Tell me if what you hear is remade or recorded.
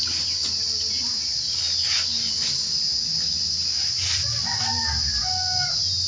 recorded